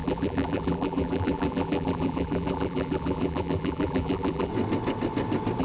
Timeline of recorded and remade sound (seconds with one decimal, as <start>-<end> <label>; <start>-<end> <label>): 0.0-4.5 remade; 4.5-5.6 recorded